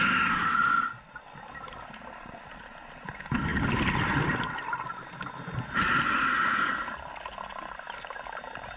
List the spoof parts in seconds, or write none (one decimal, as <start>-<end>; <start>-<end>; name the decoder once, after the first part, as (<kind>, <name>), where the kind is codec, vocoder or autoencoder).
none